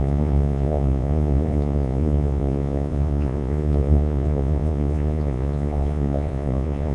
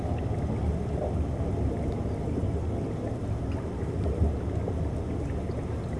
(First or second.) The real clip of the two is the second